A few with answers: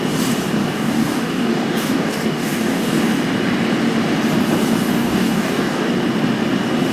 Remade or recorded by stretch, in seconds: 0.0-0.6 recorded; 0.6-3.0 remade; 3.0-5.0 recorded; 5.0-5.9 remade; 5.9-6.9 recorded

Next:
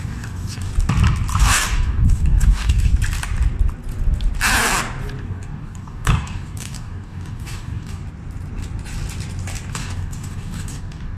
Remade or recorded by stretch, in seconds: 0.0-0.7 remade; 0.7-1.4 recorded; 1.4-2.9 remade; 2.9-5.2 recorded; 5.2-8.0 remade; 8.0-9.7 recorded; 9.7-11.2 remade